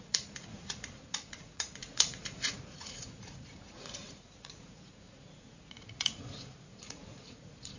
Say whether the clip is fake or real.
fake